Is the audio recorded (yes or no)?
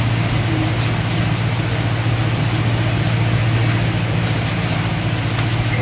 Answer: yes